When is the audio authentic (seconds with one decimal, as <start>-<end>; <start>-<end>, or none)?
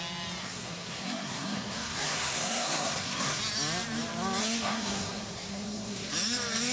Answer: 0.0-0.4; 3.4-4.4; 6.1-6.7